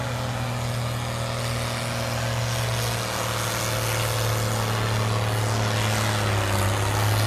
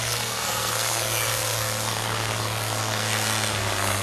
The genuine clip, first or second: first